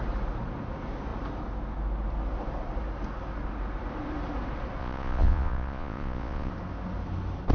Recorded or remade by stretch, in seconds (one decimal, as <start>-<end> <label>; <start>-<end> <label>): 0.0-4.8 recorded; 4.8-6.5 remade; 6.5-7.5 recorded